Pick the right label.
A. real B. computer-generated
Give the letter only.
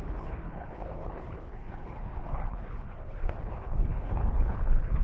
B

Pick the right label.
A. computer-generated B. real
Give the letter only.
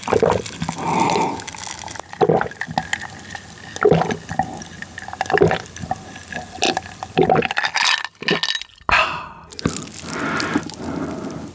B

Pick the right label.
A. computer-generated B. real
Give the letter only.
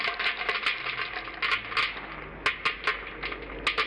B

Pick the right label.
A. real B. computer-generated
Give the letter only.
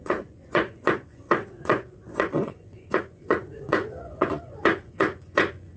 B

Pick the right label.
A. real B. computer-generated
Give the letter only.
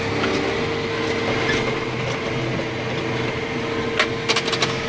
A